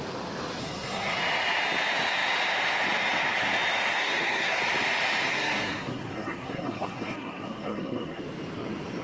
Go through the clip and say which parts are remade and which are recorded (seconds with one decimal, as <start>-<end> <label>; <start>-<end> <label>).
0.0-0.6 recorded; 0.6-1.2 remade; 1.2-4.0 recorded; 4.0-4.6 remade; 4.6-5.3 recorded; 5.3-8.2 remade; 8.2-9.0 recorded